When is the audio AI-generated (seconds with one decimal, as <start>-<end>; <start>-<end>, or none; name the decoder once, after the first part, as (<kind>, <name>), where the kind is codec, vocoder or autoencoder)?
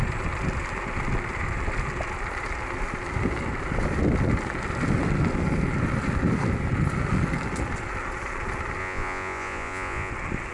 8.8-10.1 (vocoder, Vocos)